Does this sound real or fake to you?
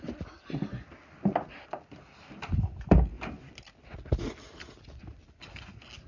real